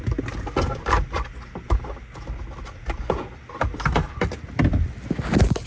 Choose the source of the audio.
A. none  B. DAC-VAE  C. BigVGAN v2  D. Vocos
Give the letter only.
A